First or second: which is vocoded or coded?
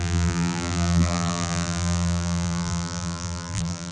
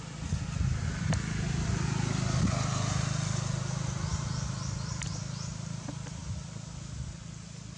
first